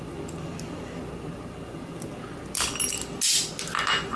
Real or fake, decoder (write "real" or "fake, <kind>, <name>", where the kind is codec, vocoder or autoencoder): real